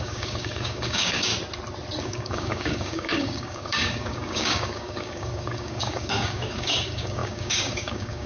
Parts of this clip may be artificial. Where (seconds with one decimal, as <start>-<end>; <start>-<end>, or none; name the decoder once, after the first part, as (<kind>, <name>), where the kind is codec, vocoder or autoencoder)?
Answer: 0.0-1.3 (codec, DAC); 2.0-8.3